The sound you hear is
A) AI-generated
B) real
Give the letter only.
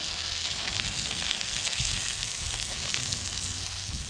A